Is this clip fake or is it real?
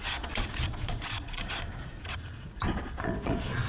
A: fake